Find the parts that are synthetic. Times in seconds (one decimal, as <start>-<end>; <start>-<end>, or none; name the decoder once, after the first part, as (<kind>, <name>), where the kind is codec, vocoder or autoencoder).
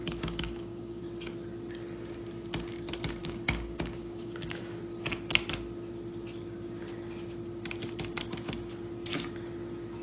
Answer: 0.0-1.0 (codec, DAC); 3.2-4.8